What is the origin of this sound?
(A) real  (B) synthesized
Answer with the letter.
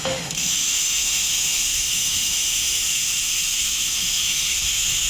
B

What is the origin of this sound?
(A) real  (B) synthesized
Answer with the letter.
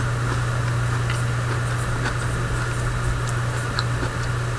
A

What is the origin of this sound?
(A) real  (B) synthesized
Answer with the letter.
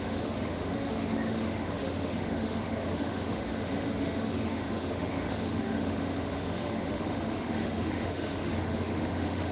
B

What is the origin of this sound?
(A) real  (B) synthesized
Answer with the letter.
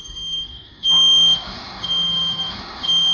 B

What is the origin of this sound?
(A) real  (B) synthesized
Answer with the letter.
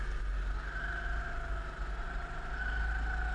A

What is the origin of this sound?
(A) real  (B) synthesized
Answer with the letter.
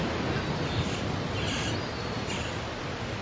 A